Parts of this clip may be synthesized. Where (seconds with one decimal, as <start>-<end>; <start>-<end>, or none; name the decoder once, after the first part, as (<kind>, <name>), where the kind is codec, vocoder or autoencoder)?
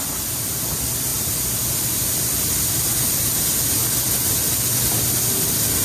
none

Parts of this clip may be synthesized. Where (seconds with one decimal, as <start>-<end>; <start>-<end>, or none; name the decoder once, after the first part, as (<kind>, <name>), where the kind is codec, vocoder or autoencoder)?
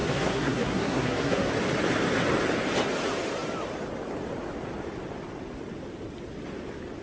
0.0-1.5 (codec, SNAC)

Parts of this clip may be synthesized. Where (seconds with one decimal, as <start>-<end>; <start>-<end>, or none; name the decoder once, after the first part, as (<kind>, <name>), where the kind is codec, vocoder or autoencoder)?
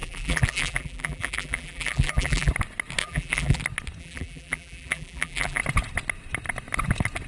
0.0-2.5 (vocoder, BigVGAN v2); 3.0-3.6; 4.0-5.6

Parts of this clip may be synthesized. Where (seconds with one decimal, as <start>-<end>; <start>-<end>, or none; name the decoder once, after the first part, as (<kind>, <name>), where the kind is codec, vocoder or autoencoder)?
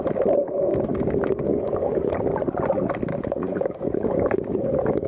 1.5-2.1 (codec, DAC); 3.1-5.1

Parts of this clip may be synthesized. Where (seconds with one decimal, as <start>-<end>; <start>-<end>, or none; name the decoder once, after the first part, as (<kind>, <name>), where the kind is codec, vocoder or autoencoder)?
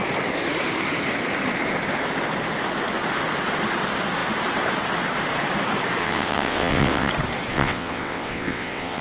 6.0-7.1 (vocoder, WaveNeXt); 7.5-9.0